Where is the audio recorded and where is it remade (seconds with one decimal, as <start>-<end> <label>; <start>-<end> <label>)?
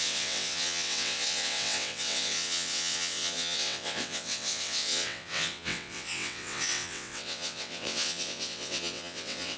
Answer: 0.0-9.6 remade